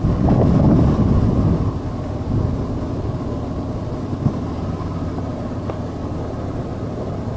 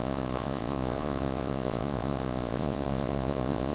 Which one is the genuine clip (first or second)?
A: first